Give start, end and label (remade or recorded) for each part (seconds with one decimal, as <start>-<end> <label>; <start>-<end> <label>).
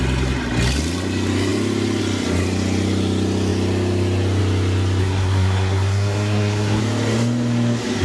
0.0-5.0 recorded; 5.0-6.8 remade; 6.8-8.0 recorded